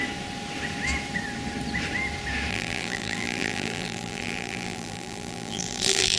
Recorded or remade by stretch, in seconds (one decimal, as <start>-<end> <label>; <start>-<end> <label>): 0.0-2.5 recorded; 2.5-6.2 remade